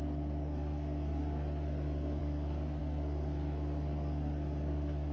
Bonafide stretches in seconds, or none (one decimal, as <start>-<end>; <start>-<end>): none